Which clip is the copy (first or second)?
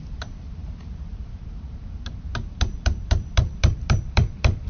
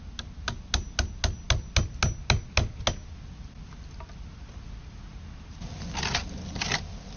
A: first